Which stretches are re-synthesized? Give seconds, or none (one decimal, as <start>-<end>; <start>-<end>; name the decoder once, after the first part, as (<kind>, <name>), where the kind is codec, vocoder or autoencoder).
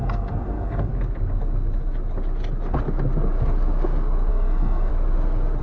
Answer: 0.0-0.9 (codec, SNAC); 4.3-4.9